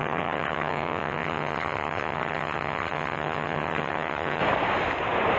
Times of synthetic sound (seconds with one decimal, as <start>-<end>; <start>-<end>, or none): 0.0-4.4